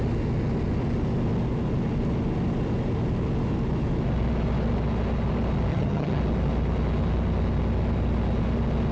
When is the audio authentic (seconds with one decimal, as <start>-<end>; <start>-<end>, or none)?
0.0-5.7; 6.2-8.9